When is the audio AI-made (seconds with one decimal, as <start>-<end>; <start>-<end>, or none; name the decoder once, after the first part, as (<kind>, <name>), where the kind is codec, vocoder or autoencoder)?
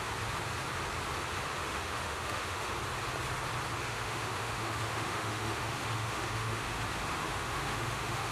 1.5-2.7 (autoencoder, DAC-VAE); 3.9-6.8; 7.2-8.3